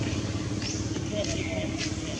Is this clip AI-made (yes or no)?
no